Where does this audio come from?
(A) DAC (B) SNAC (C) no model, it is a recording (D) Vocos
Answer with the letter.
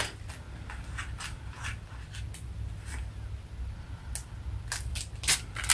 C